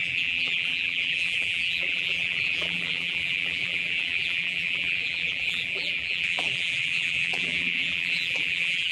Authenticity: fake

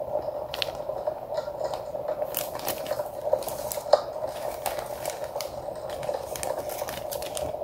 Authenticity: real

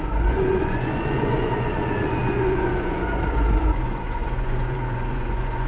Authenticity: fake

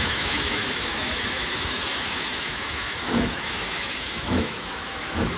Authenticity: fake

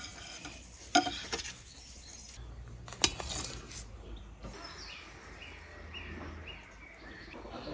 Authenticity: real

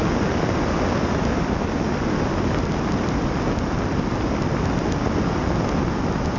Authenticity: real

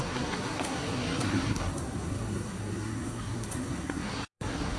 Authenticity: fake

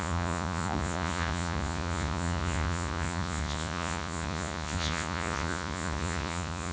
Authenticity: fake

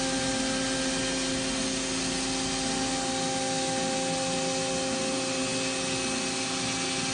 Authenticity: real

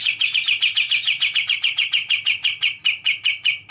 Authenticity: real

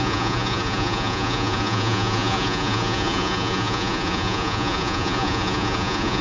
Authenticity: fake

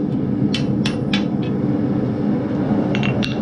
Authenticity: real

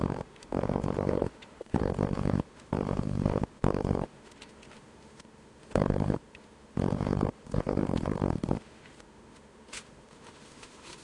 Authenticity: fake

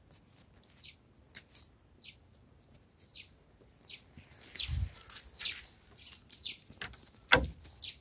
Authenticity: real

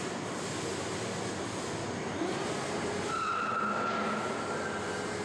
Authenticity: real